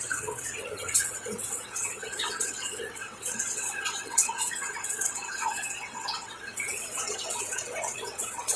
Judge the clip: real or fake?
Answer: fake